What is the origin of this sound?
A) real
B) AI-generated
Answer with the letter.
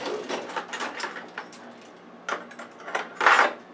A